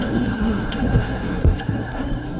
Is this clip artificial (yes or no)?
yes